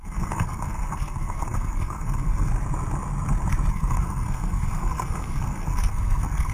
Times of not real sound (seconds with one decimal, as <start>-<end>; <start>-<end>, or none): 0.0-2.5; 3.7-6.5